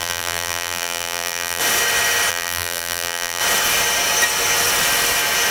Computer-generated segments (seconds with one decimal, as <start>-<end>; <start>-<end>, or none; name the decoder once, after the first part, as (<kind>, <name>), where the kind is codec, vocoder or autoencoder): 0.0-1.6 (vocoder, BigVGAN v2); 2.3-3.4